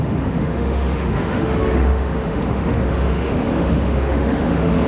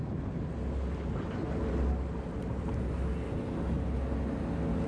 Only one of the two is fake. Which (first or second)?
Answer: first